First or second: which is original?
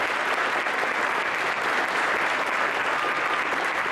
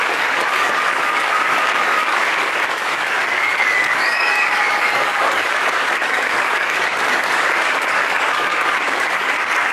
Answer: first